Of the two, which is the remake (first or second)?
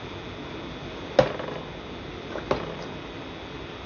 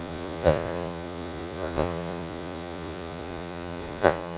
second